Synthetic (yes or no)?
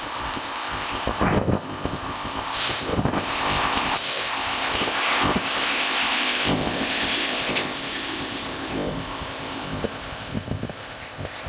yes